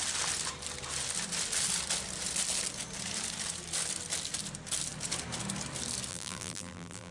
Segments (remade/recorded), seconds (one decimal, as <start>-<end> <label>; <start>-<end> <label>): 0.0-6.1 recorded; 6.1-7.1 remade